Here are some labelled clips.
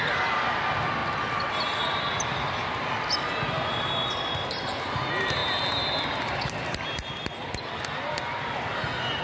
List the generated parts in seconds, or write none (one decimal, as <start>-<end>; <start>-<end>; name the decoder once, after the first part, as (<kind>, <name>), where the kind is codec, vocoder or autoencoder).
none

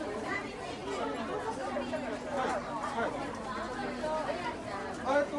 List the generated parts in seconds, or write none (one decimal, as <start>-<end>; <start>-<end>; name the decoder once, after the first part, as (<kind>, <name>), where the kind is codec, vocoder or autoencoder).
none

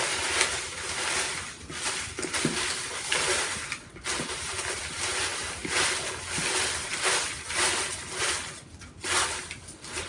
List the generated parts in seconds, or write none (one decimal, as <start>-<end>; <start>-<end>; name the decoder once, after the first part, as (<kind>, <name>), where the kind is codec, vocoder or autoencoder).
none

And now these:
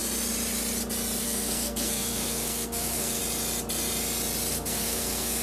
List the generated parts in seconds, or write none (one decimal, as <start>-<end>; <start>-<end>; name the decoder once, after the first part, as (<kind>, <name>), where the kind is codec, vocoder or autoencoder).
1.2-3.2 (codec, SNAC); 4.5-5.4